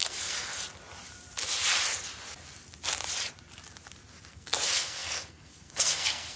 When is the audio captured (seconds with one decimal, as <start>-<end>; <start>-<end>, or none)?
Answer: 0.5-4.3